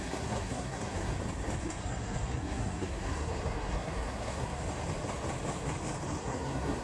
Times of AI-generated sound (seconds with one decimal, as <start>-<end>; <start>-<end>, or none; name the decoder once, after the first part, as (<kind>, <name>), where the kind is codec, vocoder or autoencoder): 0.0-1.1 (codec, SNAC); 1.6-4.6; 6.2-6.8